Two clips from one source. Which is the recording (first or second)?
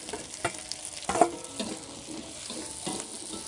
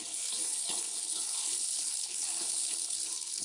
first